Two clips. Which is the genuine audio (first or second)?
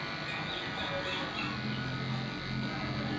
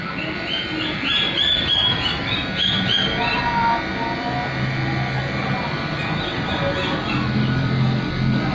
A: first